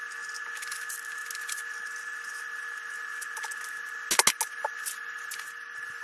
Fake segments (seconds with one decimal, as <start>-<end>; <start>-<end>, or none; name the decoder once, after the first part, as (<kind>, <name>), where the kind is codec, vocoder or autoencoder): none